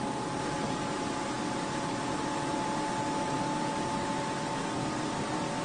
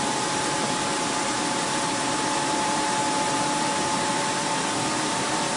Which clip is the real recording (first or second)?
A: first